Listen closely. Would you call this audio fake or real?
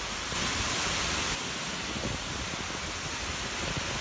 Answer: real